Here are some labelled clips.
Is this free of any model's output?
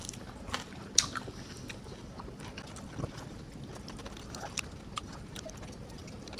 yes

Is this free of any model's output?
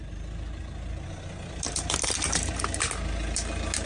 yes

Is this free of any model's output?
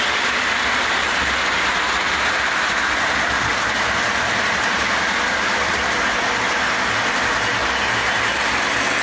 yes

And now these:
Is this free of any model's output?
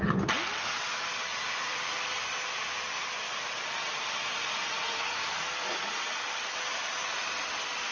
yes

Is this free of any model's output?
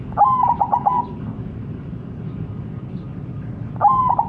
yes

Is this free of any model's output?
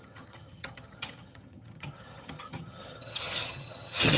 no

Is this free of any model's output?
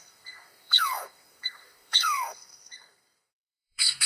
no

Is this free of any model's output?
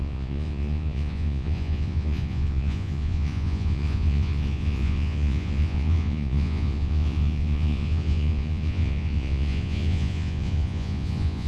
no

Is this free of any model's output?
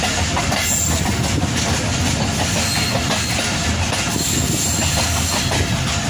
yes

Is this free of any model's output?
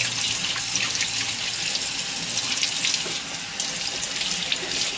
yes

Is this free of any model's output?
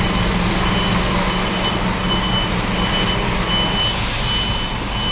yes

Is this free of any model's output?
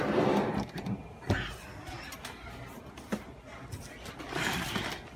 yes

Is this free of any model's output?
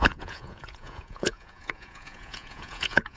no